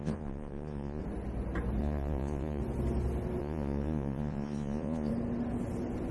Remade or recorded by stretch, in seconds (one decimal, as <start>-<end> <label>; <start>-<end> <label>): 0.0-1.0 remade; 1.0-1.8 recorded; 1.8-2.6 remade; 2.6-3.4 recorded; 3.4-5.1 remade; 5.1-6.1 recorded